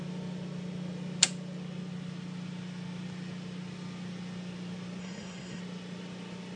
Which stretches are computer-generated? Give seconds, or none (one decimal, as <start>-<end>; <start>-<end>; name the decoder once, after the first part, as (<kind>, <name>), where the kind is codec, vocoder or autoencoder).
5.0-5.6 (codec, SNAC)